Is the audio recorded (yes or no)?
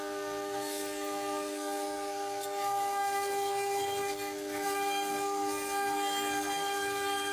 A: no